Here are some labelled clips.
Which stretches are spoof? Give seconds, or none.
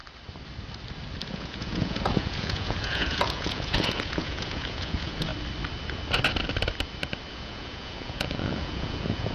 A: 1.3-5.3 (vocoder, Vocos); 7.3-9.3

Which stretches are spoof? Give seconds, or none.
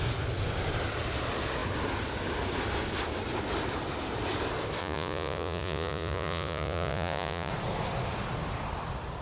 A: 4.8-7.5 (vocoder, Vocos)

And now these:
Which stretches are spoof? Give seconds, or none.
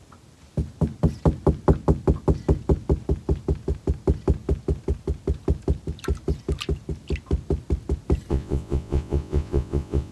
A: 8.3-10.1 (vocoder, Vocos)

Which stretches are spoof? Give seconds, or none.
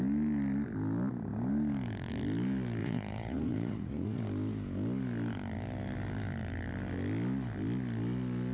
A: 2.8-4.2 (vocoder, Vocos)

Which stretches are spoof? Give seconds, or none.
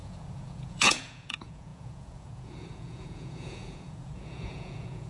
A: 0.0-5.1 (vocoder, Vocos)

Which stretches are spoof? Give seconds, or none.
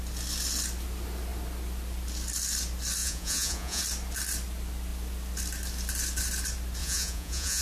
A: 3.0-3.8 (vocoder, Vocos); 6.8-7.6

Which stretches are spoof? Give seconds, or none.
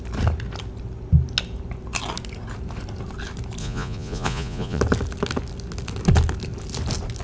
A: 3.6-4.8 (vocoder, Vocos)